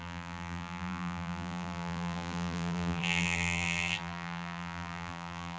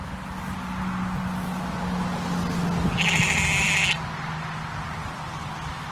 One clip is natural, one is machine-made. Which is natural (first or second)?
second